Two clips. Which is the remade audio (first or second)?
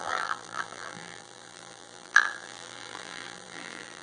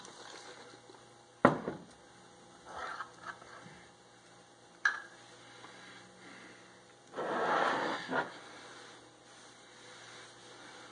first